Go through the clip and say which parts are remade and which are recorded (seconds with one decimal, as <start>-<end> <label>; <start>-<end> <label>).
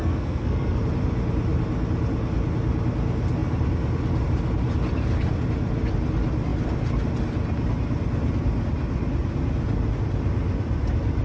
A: 0.0-0.8 remade; 0.8-11.2 recorded